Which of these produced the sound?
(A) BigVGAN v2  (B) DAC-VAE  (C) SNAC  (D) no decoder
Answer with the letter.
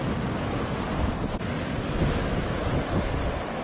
D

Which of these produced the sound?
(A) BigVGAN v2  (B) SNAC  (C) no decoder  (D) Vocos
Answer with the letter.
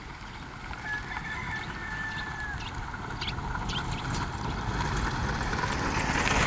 C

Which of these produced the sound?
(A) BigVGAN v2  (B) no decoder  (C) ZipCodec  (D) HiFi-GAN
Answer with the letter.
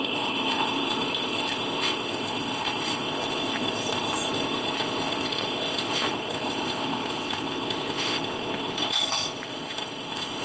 C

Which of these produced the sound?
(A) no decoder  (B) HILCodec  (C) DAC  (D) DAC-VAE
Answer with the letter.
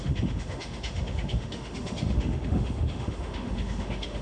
D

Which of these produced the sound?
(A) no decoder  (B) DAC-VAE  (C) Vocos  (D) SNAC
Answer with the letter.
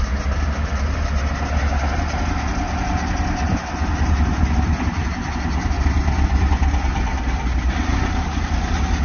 A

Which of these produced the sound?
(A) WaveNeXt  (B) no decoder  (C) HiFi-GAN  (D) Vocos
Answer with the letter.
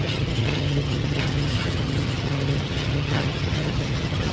C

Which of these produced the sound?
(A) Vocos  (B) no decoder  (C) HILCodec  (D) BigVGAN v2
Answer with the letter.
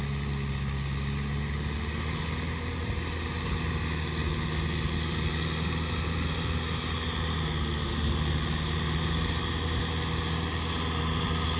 B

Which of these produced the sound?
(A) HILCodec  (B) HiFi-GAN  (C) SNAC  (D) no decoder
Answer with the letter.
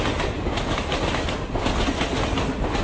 D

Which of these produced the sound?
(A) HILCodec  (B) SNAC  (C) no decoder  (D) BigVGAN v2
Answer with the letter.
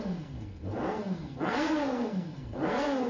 B